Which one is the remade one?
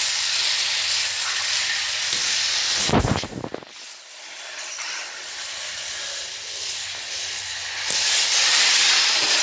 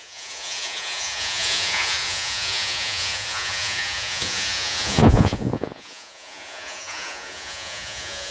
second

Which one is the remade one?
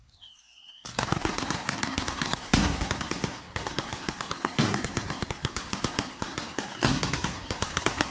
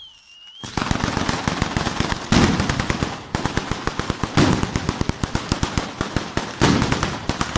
first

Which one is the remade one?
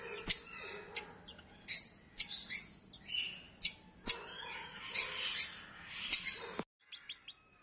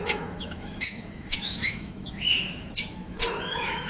second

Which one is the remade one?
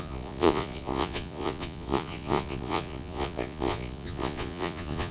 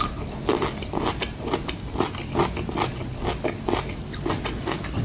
first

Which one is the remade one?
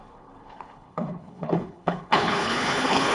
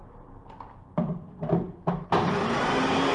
first